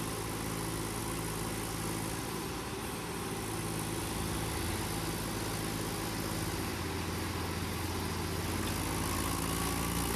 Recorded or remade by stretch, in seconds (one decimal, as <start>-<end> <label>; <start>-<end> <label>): 0.0-10.2 recorded